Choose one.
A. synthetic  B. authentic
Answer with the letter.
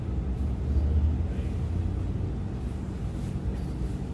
B